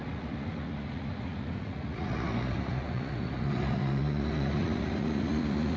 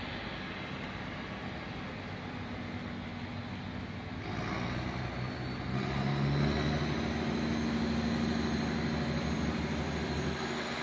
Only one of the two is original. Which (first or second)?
second